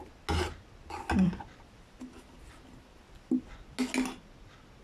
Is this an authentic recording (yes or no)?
yes